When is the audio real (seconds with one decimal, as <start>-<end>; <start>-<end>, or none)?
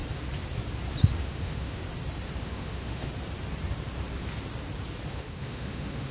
0.0-1.2; 1.8-2.4; 3.1-5.1